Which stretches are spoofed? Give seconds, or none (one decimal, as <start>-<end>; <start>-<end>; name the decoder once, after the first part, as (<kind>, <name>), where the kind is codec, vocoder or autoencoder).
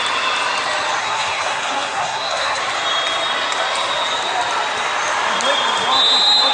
1.0-2.6 (codec, SNAC)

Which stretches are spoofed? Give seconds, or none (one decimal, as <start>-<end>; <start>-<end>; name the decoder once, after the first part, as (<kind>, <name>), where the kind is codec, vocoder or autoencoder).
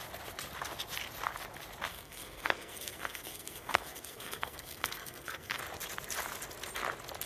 1.9-5.6 (codec, SNAC)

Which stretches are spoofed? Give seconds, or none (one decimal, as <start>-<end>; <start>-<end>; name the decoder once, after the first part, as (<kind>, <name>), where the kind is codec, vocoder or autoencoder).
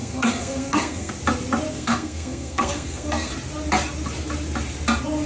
0.0-1.1 (codec, SNAC); 1.7-3.3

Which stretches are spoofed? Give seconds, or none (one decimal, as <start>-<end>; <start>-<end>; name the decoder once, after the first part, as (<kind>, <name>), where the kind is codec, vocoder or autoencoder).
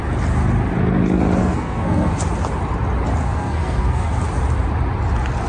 1.4-2.1 (codec, SNAC); 3.2-4.1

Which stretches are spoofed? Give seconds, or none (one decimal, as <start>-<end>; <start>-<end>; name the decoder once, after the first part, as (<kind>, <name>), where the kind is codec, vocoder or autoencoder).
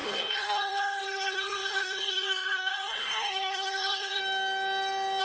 0.0-4.2 (codec, SNAC)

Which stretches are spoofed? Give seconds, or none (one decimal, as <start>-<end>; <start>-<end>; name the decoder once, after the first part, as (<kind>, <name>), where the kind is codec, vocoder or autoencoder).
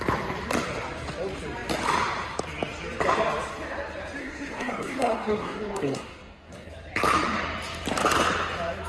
4.2-6.7 (codec, SNAC)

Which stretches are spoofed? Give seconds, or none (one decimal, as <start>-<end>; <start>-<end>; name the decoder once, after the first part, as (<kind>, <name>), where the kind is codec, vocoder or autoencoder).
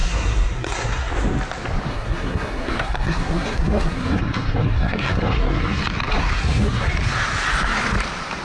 0.0-1.1 (codec, SNAC); 1.9-5.8; 6.2-6.9